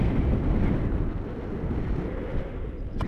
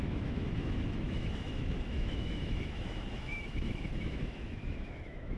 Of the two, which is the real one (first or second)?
first